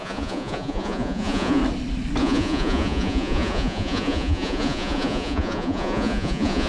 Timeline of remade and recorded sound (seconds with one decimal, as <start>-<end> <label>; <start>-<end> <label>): 0.0-1.6 remade; 1.6-2.2 recorded; 2.2-6.7 remade